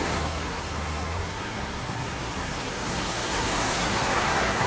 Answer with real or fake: fake